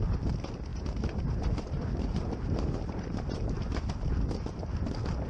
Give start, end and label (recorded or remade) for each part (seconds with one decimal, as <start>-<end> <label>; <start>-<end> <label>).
0.0-0.7 recorded; 0.7-3.9 remade; 3.9-5.3 recorded